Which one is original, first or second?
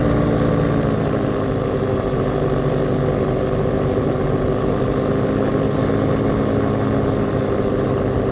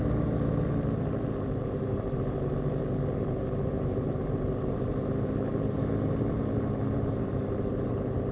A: first